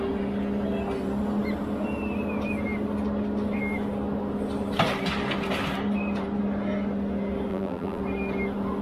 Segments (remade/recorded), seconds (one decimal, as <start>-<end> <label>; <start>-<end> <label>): 0.0-7.5 recorded; 7.5-8.0 remade; 8.0-8.8 recorded